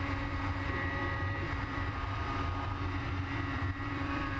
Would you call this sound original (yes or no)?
no